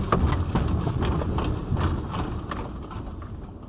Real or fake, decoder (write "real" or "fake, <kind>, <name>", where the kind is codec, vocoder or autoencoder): real